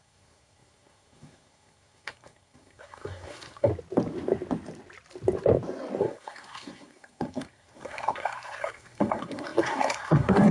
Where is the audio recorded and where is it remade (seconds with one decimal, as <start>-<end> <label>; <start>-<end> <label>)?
0.0-3.7 remade; 3.7-6.0 recorded; 6.0-10.5 remade